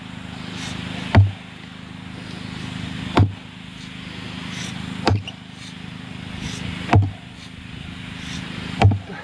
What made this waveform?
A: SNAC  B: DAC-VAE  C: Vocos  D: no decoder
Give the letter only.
D